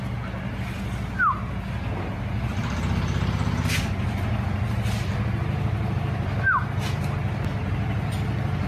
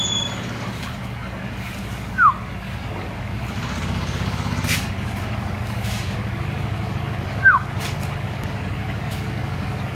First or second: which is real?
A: first